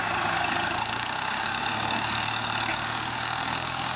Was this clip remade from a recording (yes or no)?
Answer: yes